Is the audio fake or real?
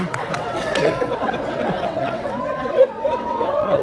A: fake